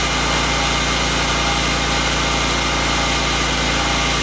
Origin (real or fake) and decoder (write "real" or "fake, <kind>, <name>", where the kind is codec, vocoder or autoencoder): real